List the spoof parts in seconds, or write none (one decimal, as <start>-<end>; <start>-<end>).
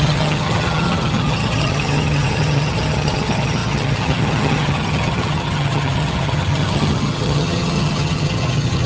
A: 0.0-8.9